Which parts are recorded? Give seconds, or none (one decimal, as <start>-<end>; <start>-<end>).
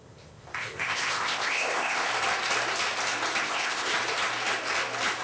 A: 2.1-3.4; 3.9-5.2